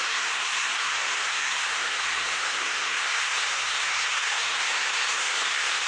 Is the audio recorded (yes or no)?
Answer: no